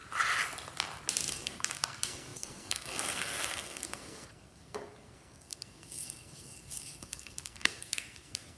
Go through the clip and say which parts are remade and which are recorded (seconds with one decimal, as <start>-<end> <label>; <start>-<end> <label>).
0.0-1.3 recorded; 1.3-8.6 remade